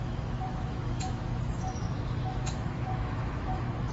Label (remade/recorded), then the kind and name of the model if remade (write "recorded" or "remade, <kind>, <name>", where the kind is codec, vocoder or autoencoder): remade, autoencoder, DAC-VAE